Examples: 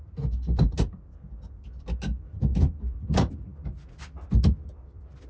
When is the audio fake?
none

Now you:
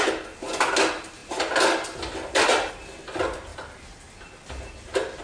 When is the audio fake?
none

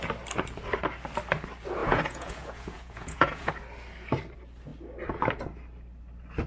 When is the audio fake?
1.8-3.5 (vocoder, Vocos)

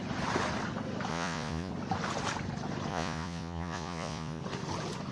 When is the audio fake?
1.1-1.7 (vocoder, Vocos); 2.9-4.4

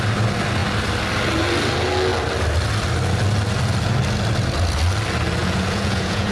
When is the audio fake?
5.4-6.3 (vocoder, Vocos)

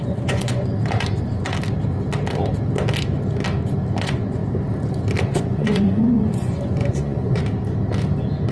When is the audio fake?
0.0-0.7 (vocoder, Vocos); 4.0-4.4; 5.2-7.4

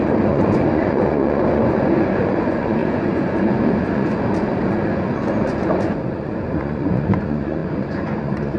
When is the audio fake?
0.0-8.6 (vocoder, Vocos)

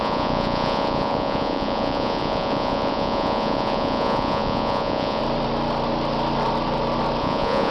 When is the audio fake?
0.0-5.2 (vocoder, Vocos); 7.2-7.7